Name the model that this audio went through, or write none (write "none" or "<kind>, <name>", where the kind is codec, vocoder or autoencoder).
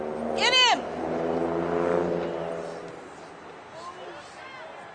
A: none